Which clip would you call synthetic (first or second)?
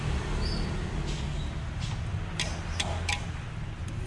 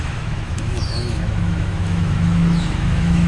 second